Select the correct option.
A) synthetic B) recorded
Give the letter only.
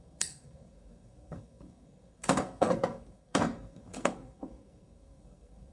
A